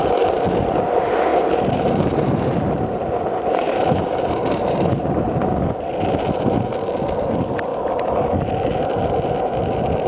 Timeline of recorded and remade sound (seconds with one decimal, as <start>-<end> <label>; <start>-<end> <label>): 0.0-1.3 recorded; 1.3-5.3 remade; 5.3-10.1 recorded